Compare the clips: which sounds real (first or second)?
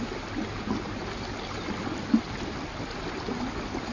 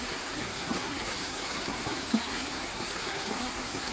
first